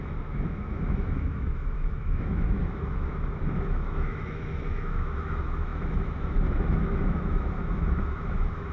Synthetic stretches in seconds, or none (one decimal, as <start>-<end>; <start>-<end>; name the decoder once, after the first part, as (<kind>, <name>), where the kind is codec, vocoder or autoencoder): 0.0-8.7 (autoencoder, DAC-VAE)